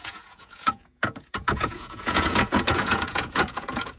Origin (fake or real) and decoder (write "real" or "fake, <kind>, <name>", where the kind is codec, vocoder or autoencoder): fake, vocoder, Vocos